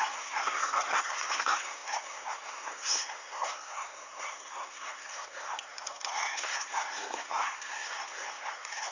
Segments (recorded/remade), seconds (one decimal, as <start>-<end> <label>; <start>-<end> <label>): 0.0-8.9 remade